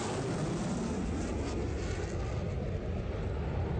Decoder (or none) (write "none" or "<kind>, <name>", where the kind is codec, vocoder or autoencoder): none